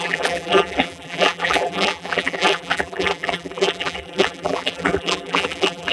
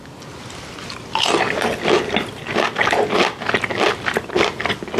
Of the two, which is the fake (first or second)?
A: first